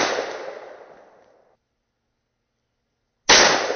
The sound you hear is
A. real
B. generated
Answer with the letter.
A